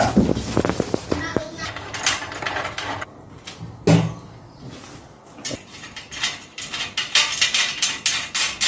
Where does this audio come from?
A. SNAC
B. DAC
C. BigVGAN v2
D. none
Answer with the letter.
D